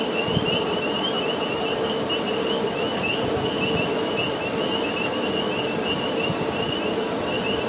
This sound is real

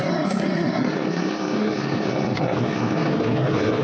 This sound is fake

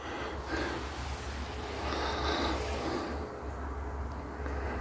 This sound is real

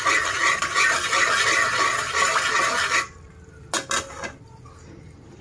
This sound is real